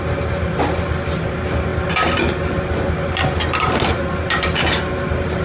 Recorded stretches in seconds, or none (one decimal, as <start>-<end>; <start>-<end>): 0.0-5.4